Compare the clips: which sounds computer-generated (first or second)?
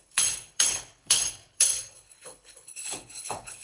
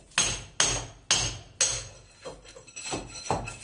first